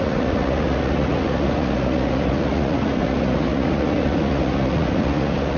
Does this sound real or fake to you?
fake